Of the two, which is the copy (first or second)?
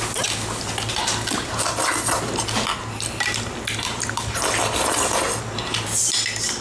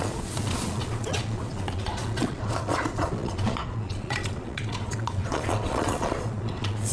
second